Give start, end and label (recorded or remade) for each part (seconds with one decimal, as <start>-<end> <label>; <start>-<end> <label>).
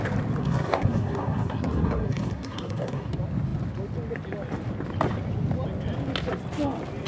0.0-0.4 recorded; 0.4-3.1 remade; 3.1-7.1 recorded